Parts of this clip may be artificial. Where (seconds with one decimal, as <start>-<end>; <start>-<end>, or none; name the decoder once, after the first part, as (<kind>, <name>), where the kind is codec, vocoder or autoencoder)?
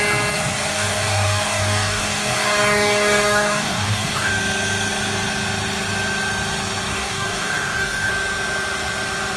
0.7-4.3 (codec, DAC); 6.9-8.1